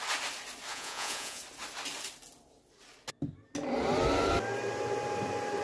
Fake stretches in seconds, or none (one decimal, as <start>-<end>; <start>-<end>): 0.7-1.4